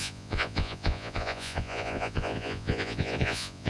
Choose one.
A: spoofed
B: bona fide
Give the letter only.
A